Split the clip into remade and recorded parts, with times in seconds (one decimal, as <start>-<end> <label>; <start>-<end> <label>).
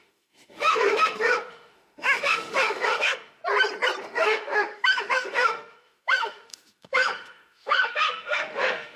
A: 0.0-3.4 remade; 3.4-4.0 recorded; 4.0-9.0 remade